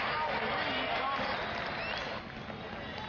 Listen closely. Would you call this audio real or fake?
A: real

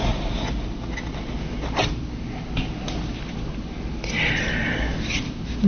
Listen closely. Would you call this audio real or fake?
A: real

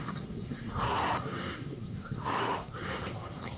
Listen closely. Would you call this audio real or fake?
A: fake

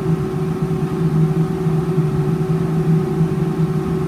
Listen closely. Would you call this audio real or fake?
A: real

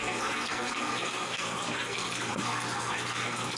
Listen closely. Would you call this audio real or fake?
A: fake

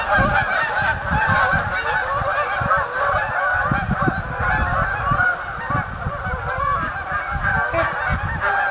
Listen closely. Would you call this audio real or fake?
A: real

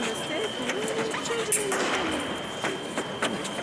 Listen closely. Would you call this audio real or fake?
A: real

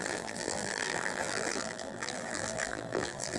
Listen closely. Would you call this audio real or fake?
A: fake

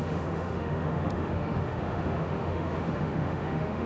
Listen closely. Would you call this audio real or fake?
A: fake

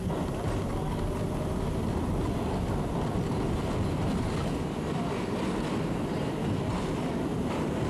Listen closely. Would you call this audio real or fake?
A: real